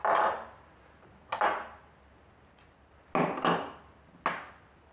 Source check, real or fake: real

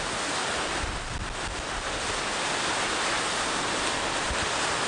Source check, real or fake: real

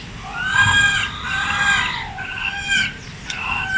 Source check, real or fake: real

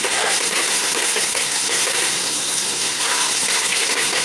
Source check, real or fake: fake